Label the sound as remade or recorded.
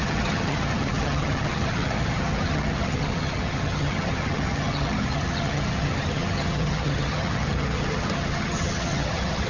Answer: remade